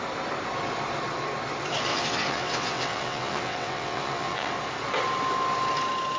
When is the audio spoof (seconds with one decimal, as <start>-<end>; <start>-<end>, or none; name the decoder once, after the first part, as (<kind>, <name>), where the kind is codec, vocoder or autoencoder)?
1.9-4.5 (vocoder, WaveNeXt)